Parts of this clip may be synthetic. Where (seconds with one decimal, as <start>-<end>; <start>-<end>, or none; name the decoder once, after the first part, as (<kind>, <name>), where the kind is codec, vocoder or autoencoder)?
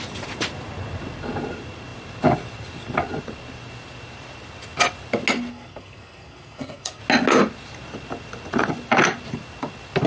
5.5-7.0 (codec, SNAC)